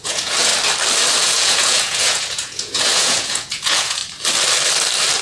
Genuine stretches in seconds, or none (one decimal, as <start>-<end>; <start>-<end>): 0.5-1.2; 4.0-5.2